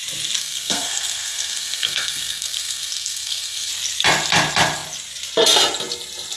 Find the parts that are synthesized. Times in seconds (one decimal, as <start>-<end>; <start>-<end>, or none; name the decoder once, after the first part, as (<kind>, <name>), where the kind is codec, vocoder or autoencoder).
0.4-3.7 (codec, SNAC)